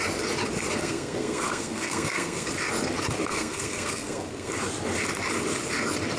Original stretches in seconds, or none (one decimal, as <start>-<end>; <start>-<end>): 0.0-0.8; 2.5-3.3; 4.5-6.2